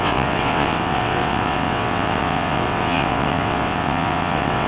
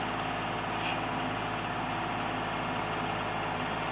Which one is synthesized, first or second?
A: first